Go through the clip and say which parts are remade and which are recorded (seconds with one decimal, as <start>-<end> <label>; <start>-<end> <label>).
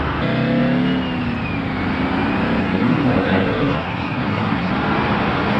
0.0-2.6 recorded; 2.6-4.7 remade; 4.7-5.6 recorded